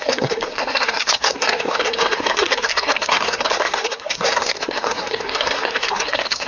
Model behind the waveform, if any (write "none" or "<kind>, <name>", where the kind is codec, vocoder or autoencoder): codec, SNAC